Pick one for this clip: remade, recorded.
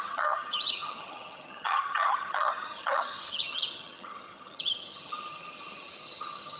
remade